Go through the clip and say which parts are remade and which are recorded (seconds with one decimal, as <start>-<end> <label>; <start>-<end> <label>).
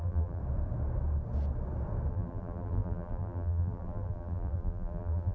0.0-0.4 remade; 0.4-2.1 recorded; 2.1-5.3 remade